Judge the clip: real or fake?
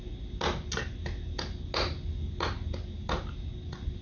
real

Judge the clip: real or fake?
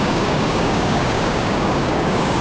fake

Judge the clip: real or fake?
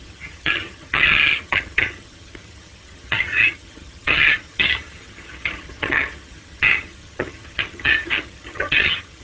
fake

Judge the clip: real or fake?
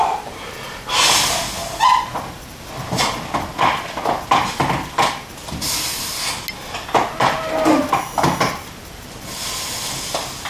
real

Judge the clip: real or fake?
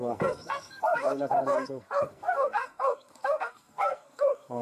fake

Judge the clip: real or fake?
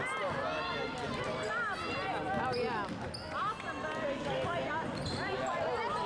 real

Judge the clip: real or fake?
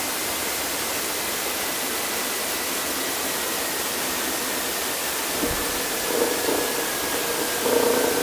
fake